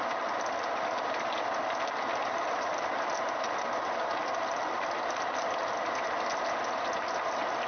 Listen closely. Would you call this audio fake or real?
real